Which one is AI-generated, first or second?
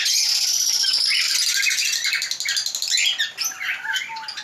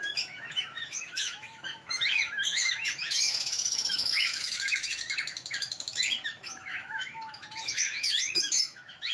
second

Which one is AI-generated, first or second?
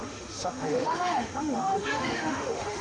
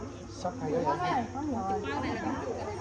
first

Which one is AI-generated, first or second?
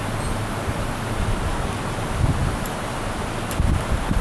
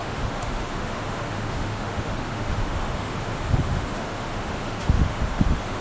second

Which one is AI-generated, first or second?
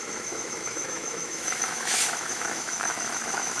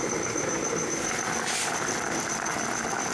first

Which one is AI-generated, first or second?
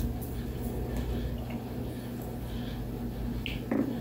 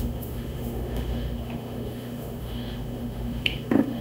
second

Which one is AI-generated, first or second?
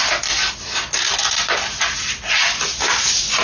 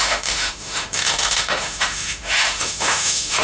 second